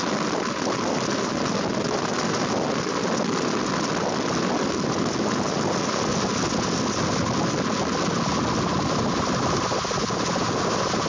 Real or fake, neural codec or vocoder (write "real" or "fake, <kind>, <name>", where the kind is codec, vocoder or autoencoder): real